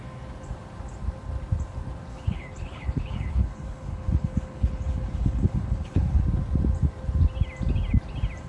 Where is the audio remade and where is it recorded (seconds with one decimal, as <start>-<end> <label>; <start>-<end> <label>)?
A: 0.0-2.1 recorded; 2.1-6.2 remade; 6.2-8.5 recorded